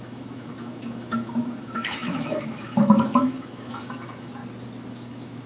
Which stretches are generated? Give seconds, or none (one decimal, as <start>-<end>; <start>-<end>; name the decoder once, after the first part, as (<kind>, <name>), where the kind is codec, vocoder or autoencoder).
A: 0.0-4.4 (autoencoder, DAC-VAE); 4.9-5.5